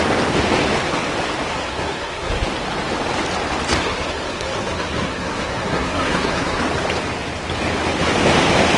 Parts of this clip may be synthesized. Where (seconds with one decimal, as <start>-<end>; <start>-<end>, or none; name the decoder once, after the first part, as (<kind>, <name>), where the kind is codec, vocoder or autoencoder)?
1.5-2.3 (codec, SNAC); 3.8-6.6